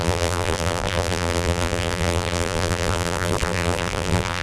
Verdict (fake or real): fake